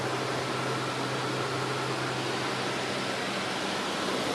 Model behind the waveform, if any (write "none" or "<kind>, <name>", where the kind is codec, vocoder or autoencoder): none